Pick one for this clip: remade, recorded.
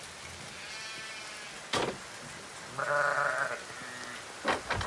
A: recorded